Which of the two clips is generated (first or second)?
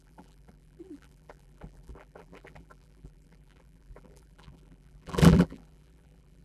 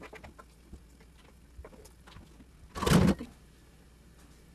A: first